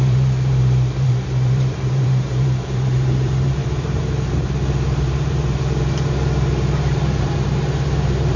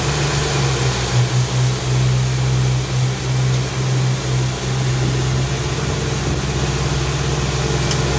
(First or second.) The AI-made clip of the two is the first